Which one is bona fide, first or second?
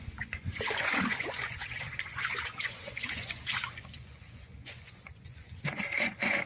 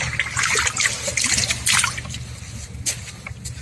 second